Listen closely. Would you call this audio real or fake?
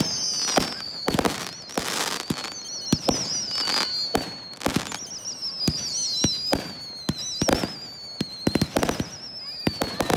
real